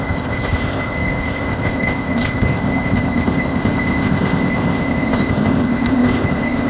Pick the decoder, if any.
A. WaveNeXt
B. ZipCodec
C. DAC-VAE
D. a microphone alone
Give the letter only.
B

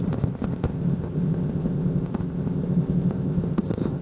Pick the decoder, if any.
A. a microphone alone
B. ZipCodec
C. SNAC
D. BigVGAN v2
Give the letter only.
B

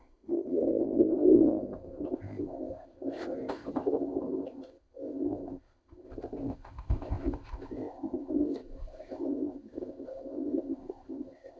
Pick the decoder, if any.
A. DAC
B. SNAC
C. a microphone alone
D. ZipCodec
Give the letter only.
D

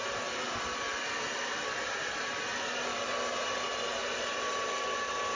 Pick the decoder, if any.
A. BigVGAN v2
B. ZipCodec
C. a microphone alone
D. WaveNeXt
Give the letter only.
C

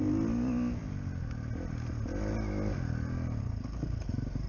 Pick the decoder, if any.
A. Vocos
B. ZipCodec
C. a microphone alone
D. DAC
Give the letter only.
C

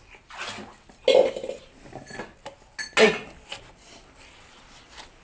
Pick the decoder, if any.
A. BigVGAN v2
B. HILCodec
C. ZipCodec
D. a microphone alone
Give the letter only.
D